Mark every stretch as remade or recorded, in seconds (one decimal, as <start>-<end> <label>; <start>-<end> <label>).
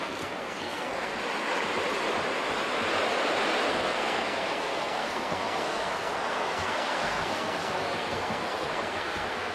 0.0-1.1 remade; 1.1-3.7 recorded; 3.7-9.5 remade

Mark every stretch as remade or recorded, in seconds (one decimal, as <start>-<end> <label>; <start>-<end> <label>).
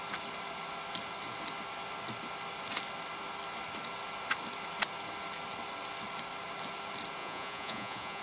0.0-7.2 recorded; 7.2-8.2 remade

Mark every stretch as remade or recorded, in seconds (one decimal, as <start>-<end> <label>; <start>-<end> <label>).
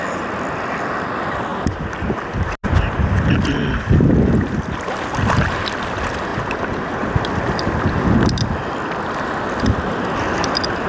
0.0-10.9 recorded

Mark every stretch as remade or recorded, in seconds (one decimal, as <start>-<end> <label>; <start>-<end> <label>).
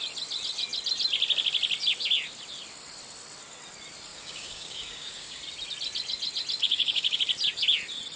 0.0-4.1 recorded; 4.1-5.4 remade; 5.4-6.6 recorded; 6.6-7.2 remade; 7.2-8.2 recorded